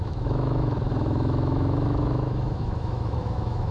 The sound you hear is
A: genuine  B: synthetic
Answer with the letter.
B